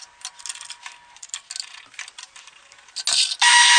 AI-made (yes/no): no